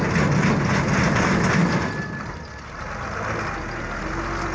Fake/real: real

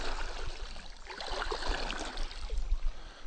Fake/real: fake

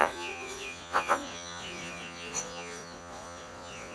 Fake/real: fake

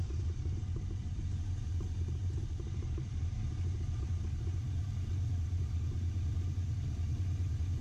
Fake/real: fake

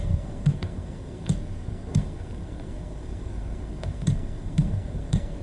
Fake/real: fake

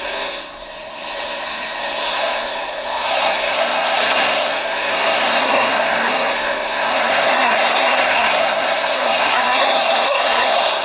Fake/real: fake